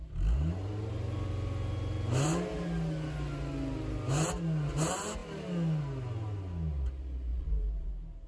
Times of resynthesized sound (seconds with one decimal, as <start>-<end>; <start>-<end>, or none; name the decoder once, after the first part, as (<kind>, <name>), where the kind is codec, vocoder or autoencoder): 7.3-7.9 (vocoder, Vocos)